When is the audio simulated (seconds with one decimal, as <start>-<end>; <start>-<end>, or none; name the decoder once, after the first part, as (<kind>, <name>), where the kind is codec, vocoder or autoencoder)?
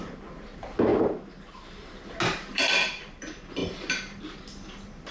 0.9-2.0 (vocoder, BigVGAN v2); 2.5-3.0; 3.6-4.2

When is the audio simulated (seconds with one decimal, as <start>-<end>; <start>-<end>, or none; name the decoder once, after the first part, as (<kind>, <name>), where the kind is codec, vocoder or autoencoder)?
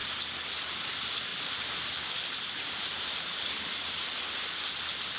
1.3-4.4 (vocoder, BigVGAN v2)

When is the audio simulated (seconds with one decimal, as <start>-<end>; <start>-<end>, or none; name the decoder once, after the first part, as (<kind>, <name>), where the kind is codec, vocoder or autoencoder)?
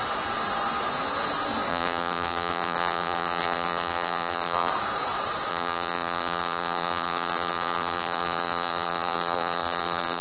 1.7-4.7 (vocoder, BigVGAN v2); 5.5-10.2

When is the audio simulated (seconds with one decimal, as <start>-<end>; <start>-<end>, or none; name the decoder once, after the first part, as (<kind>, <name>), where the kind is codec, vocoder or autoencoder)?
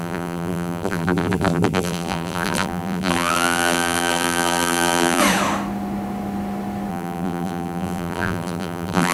0.0-5.2 (vocoder, BigVGAN v2); 6.9-9.1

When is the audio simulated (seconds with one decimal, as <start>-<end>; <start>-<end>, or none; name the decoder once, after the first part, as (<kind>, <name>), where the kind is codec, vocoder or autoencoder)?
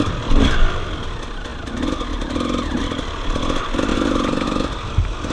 3.9-5.3 (vocoder, BigVGAN v2)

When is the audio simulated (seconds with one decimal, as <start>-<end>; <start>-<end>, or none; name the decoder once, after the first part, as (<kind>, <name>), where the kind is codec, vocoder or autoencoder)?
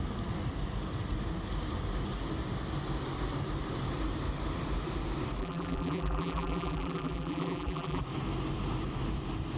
5.4-8.0 (vocoder, BigVGAN v2)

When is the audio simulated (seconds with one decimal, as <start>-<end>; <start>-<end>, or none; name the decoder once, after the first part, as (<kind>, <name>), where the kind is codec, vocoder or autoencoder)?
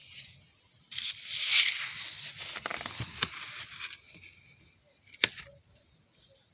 none